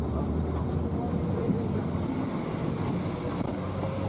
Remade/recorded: recorded